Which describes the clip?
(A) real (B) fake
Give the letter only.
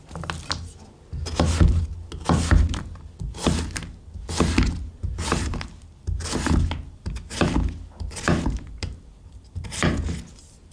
A